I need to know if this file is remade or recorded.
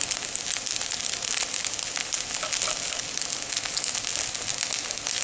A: recorded